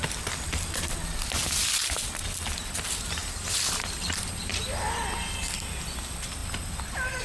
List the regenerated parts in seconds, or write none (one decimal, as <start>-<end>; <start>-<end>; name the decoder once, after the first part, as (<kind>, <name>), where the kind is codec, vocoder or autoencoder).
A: 3.2-4.5 (vocoder, BigVGAN v2)